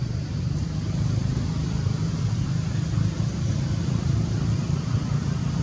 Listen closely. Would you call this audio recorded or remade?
remade